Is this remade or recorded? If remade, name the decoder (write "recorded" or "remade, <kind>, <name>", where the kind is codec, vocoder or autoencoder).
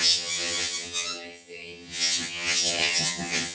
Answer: remade, vocoder, HiFi-GAN